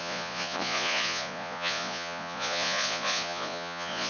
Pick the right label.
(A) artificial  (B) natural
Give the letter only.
A